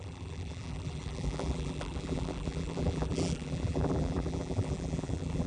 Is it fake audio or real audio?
fake